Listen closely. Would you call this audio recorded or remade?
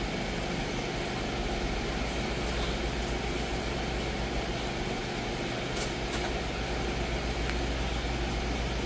recorded